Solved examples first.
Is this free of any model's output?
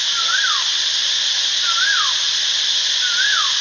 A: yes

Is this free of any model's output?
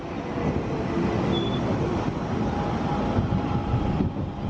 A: yes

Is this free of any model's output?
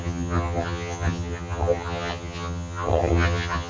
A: no